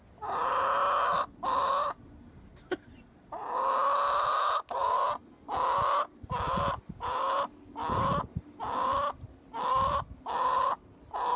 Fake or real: real